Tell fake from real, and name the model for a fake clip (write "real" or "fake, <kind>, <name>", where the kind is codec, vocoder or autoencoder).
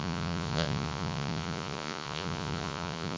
fake, vocoder, Vocos